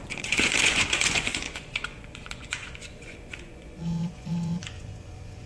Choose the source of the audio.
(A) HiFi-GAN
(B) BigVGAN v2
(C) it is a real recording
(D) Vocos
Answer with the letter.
D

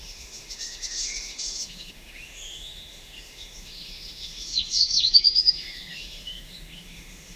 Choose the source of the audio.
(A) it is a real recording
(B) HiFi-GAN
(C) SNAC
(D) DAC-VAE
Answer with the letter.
D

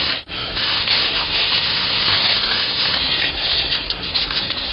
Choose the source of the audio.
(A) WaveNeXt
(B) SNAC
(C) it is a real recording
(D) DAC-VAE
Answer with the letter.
B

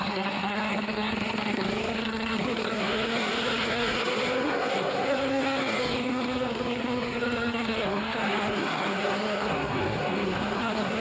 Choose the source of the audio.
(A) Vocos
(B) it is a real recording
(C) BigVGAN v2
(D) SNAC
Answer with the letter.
D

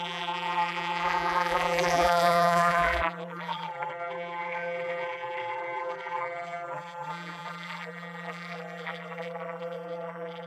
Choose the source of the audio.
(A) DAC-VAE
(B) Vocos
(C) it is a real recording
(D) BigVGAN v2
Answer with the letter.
D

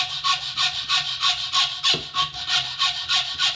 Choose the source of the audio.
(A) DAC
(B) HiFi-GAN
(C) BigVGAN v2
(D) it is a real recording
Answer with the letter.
D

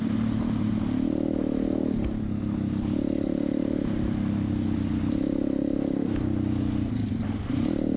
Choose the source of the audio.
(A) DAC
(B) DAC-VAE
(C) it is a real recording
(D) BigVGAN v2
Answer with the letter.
C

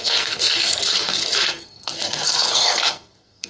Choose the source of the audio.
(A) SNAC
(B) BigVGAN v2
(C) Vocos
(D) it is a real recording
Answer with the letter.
A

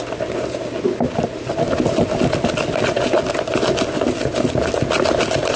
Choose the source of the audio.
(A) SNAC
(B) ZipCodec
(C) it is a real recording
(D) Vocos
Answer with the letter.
C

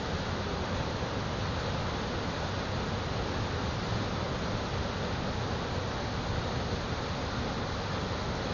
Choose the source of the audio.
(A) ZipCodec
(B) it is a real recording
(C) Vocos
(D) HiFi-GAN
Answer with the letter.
B